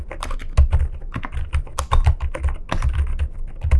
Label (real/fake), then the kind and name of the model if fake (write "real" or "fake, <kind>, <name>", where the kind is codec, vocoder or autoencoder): real